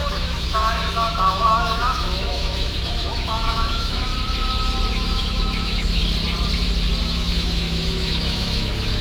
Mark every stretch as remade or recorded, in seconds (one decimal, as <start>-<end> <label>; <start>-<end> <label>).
0.0-4.1 remade; 4.1-4.9 recorded; 4.9-6.0 remade; 6.0-7.0 recorded; 7.0-9.0 remade